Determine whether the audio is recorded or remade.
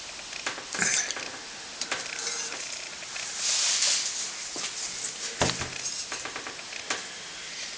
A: recorded